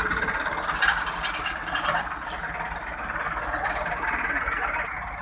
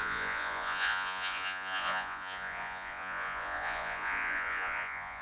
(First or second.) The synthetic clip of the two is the second